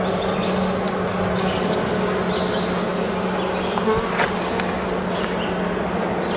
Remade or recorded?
recorded